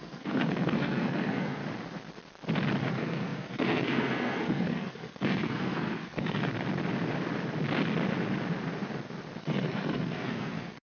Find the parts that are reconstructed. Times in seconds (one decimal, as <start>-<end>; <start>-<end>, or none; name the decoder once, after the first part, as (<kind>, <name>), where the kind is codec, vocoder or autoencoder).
0.0-1.6 (codec, SNAC); 2.9-6.5; 9.4-10.8